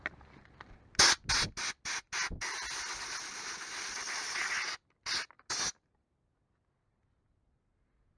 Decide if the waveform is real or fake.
real